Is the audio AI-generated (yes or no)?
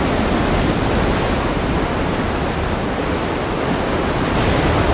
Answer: no